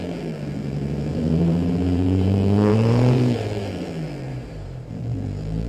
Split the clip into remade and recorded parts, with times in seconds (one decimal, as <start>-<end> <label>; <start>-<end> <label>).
0.0-4.3 remade; 4.3-4.9 recorded; 4.9-5.7 remade